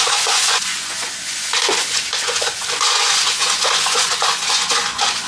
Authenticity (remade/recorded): remade